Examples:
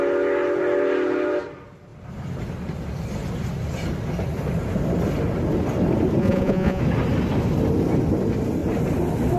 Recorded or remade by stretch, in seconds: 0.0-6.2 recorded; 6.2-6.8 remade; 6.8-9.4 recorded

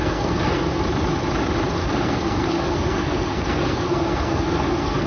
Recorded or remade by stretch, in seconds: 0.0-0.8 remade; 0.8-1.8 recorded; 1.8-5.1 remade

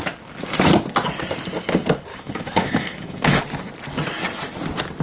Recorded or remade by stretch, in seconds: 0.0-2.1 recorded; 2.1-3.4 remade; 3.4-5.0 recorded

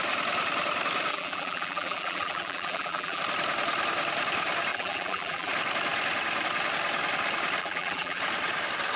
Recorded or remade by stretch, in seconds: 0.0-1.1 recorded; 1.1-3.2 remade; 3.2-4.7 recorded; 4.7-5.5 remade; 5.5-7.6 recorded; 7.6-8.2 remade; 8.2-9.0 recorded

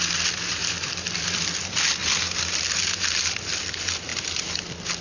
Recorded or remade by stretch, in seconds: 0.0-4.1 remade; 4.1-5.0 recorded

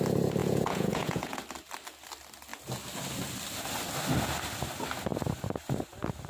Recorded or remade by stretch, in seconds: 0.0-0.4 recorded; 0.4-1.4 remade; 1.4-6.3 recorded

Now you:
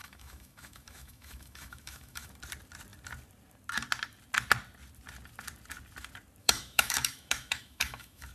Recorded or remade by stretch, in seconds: 0.0-2.3 remade; 2.3-6.4 recorded; 6.4-8.3 remade

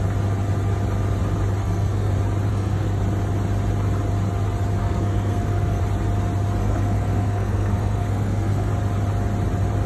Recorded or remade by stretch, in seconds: 0.0-1.6 recorded; 1.6-2.1 remade; 2.1-2.5 recorded; 2.5-3.0 remade; 3.0-4.8 recorded; 4.8-5.8 remade; 5.8-6.6 recorded; 6.6-8.7 remade; 8.7-9.9 recorded